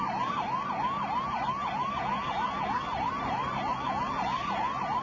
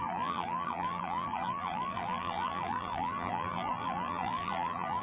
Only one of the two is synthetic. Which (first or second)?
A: second